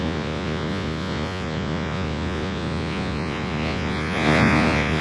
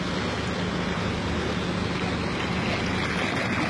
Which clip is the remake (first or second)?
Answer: first